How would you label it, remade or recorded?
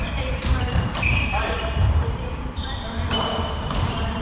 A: remade